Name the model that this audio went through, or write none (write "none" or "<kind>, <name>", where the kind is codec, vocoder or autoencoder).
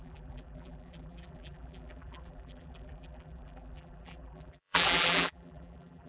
vocoder, BigVGAN v2